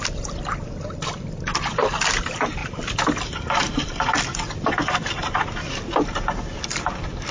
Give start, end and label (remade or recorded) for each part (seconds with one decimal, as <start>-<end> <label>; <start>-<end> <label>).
0.0-7.3 recorded